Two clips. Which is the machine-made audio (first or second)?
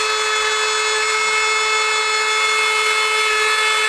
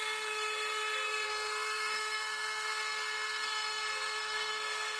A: second